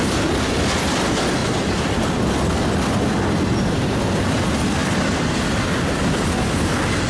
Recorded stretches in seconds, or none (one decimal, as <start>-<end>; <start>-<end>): 0.0-7.1